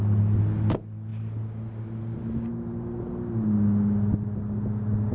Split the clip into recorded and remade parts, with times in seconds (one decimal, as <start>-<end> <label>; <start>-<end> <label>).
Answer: 0.0-5.1 recorded